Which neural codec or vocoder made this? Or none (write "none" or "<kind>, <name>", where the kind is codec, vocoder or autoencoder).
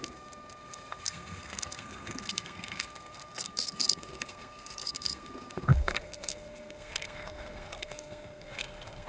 codec, SNAC